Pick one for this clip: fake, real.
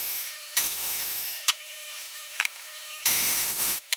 fake